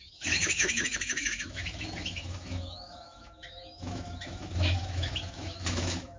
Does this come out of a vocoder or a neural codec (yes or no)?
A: yes